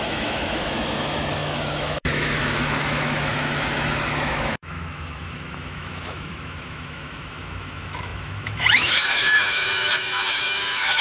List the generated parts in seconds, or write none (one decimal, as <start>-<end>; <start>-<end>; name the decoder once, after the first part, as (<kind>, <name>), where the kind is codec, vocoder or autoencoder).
0.0-11.0 (autoencoder, DAC-VAE)